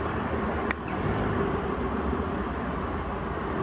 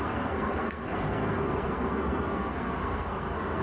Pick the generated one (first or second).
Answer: second